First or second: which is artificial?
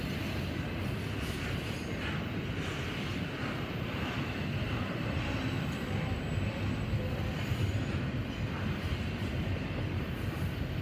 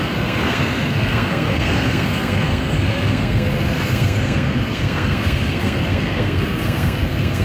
second